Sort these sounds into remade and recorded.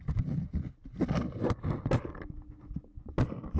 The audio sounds recorded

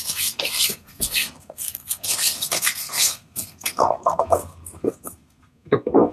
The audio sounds remade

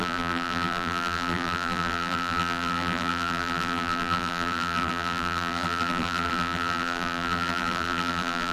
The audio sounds remade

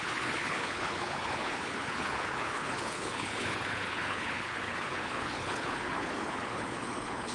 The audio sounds remade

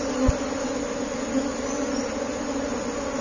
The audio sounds recorded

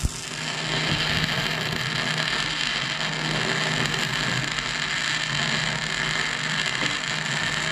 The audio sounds recorded